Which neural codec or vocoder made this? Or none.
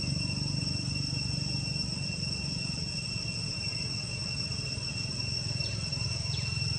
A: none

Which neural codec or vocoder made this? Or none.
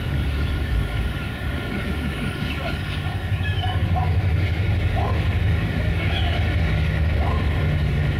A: codec, DAC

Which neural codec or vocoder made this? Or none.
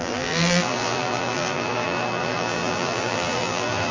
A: vocoder, BigVGAN v2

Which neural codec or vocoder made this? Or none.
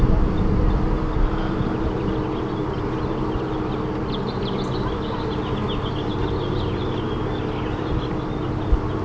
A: none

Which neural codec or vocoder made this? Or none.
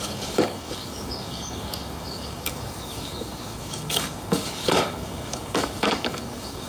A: codec, DAC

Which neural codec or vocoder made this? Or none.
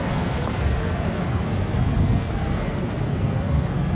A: codec, SNAC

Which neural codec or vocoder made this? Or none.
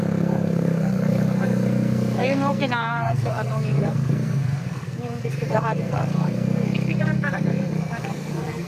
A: codec, SNAC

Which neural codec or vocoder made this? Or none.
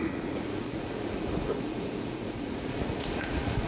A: vocoder, Vocos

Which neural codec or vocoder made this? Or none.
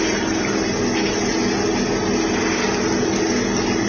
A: none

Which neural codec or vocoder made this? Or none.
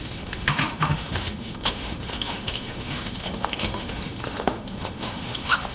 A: autoencoder, DAC-VAE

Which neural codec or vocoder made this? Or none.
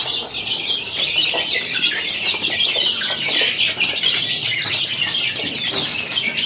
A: none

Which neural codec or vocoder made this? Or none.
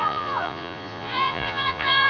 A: vocoder, Vocos